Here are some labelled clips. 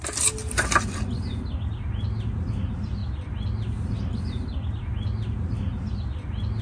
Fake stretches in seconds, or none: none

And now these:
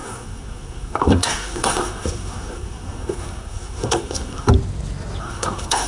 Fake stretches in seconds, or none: 0.0-4.5; 5.2-5.9

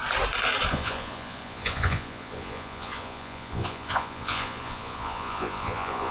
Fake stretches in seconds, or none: 0.7-6.1